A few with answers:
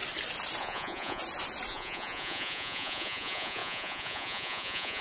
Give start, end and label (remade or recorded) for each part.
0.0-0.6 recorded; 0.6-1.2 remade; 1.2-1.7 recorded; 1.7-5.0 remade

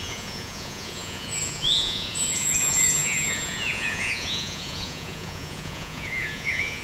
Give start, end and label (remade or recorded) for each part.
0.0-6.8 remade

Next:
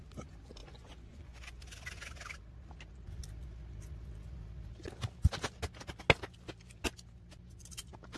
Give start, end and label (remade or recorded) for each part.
0.0-0.6 recorded; 0.6-1.6 remade; 1.6-8.2 recorded